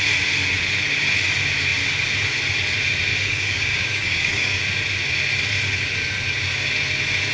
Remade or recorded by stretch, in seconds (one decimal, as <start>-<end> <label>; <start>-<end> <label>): 0.0-3.1 recorded; 3.1-4.6 remade; 4.6-7.3 recorded